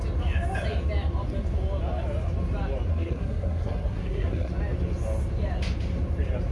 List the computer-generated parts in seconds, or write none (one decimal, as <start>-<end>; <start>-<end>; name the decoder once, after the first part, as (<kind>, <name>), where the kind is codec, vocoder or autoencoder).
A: 2.9-4.5 (codec, SNAC)